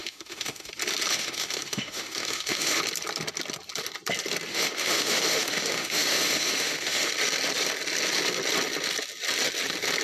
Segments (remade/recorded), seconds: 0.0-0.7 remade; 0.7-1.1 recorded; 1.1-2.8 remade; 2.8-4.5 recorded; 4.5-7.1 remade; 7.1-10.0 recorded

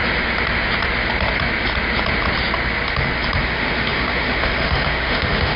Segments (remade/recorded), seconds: 0.0-3.4 recorded; 3.4-5.6 remade

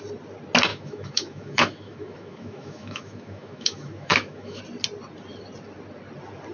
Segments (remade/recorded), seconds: 0.0-0.7 recorded; 0.7-4.6 remade; 4.6-6.5 recorded